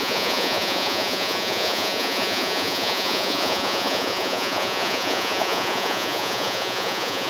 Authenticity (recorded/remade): remade